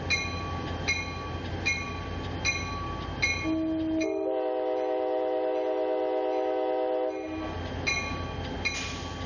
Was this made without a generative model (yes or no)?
yes